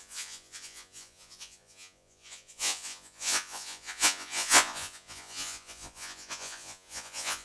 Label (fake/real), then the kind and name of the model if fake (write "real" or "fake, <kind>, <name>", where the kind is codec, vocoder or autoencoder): fake, vocoder, Vocos